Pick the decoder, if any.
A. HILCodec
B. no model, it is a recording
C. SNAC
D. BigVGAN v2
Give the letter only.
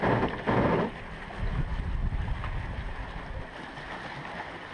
B